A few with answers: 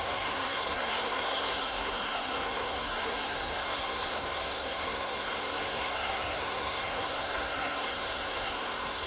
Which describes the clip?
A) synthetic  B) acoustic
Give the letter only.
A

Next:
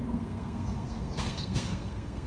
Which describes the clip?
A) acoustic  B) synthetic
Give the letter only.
B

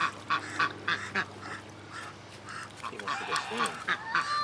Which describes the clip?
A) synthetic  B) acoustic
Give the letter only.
B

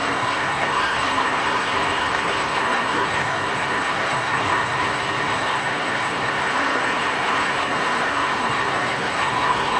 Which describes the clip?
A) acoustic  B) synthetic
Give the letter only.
B